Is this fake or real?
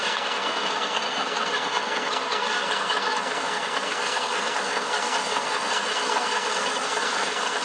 fake